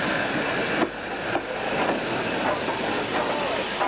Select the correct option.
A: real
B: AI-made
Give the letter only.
A